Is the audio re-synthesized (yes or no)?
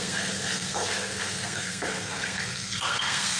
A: yes